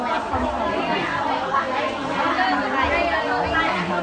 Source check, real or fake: real